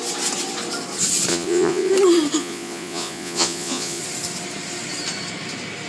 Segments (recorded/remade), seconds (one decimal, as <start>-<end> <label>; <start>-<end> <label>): 0.0-1.3 recorded; 1.3-1.9 remade; 1.9-2.4 recorded; 2.4-4.0 remade; 4.0-5.9 recorded